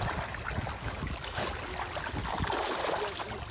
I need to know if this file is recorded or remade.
recorded